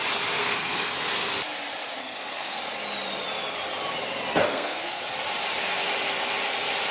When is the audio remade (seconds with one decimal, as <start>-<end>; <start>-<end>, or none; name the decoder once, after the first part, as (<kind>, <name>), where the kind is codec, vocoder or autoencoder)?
0.4-0.9 (codec, SNAC); 2.0-2.6; 4.4-5.0